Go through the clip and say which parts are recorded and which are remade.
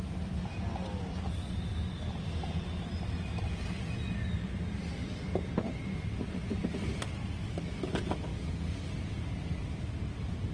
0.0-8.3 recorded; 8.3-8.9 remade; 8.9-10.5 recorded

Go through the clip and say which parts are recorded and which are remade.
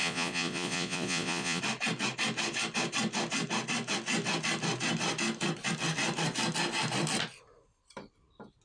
0.0-1.6 remade; 1.6-8.6 recorded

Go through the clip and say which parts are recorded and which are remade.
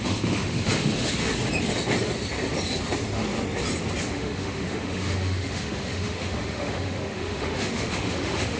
0.0-1.3 remade; 1.3-4.0 recorded; 4.0-8.6 remade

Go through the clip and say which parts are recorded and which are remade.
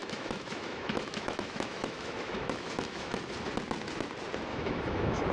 0.0-3.2 remade; 3.2-4.5 recorded; 4.5-5.3 remade